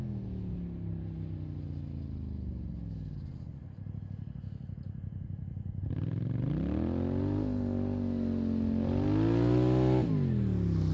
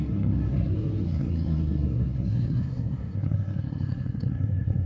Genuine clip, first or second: first